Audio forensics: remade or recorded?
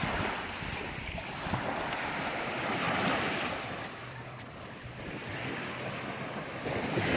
remade